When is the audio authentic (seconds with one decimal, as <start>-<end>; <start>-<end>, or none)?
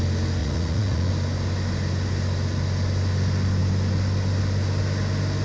0.0-0.4; 1.1-5.4